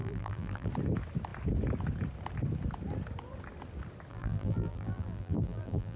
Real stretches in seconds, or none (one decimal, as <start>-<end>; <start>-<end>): 0.7-4.1